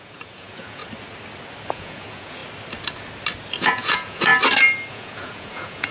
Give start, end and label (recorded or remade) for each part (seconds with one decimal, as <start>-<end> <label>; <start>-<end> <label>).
0.0-0.8 remade; 0.8-1.7 recorded; 1.7-2.4 remade; 2.4-3.6 recorded; 3.6-4.3 remade; 4.3-4.9 recorded; 4.9-5.9 remade